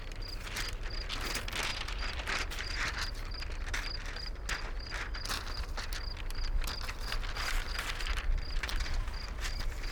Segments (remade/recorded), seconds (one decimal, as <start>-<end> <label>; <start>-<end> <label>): 0.0-1.7 recorded; 1.7-3.3 remade; 3.3-9.9 recorded